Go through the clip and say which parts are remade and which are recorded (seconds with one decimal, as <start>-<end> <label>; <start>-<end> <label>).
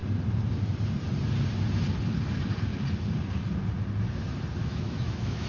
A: 0.0-4.6 recorded; 4.6-5.5 remade